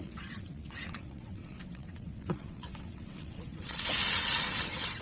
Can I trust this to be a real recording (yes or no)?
no